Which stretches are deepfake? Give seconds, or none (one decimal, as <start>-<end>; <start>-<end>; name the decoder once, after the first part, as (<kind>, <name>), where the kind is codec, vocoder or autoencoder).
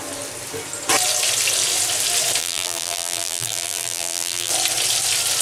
2.4-4.5 (vocoder, BigVGAN v2)